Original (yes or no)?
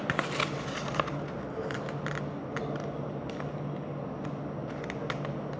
yes